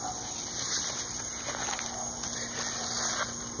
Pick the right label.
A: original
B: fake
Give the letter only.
A